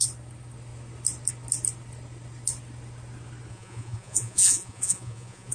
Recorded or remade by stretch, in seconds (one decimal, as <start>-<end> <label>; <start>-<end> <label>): 0.0-3.5 recorded; 3.5-5.5 remade